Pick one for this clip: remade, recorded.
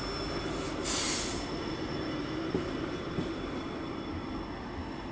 recorded